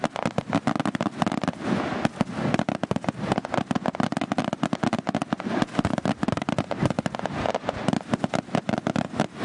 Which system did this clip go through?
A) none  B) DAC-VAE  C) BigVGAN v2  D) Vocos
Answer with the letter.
A